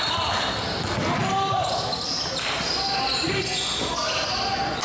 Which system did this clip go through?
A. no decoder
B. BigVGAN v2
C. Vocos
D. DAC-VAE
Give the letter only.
B